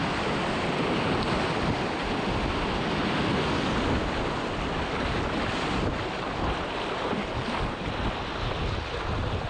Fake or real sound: real